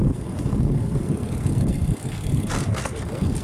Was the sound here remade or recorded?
remade